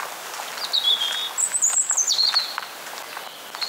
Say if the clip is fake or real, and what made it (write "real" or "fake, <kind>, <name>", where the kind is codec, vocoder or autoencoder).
real